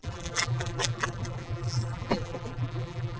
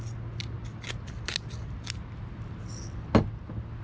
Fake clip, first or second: first